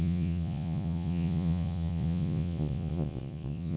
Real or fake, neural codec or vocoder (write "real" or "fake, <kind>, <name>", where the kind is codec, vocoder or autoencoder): fake, vocoder, Vocos